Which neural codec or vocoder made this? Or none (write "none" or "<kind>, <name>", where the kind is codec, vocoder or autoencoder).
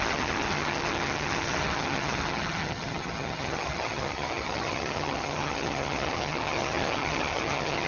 vocoder, HiFi-GAN